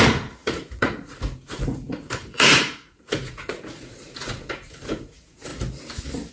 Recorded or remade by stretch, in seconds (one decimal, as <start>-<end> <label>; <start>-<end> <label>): 0.0-5.5 remade; 5.5-6.3 recorded